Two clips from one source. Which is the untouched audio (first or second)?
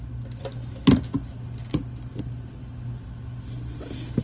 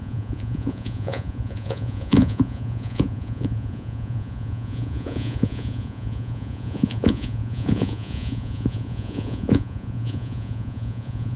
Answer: first